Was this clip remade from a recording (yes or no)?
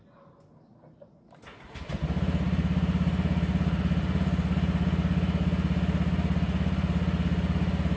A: no